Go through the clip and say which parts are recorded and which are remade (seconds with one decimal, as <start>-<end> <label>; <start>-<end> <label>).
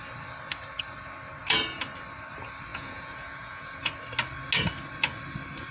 0.0-2.7 recorded; 2.7-3.8 remade; 3.8-5.7 recorded